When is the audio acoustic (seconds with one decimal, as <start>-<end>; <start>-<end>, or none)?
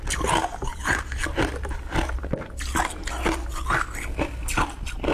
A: 0.0-5.1